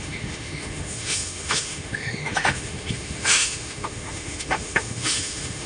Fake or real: fake